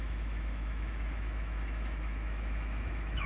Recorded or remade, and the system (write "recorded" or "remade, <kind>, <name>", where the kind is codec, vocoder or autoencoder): remade, autoencoder, DAC-VAE